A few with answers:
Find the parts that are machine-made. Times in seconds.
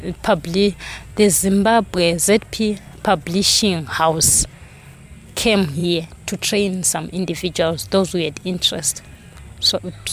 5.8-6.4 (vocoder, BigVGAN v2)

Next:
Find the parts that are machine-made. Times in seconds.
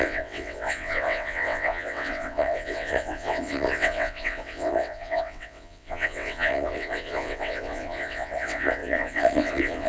0.0-9.9 (vocoder, WaveNeXt)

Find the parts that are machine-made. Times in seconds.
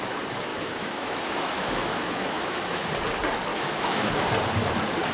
0.5-2.9 (autoencoder, DAC-VAE); 3.5-4.1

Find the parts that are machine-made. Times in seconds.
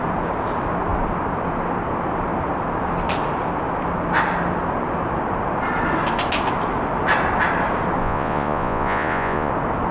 8.0-9.5 (vocoder, Vocos)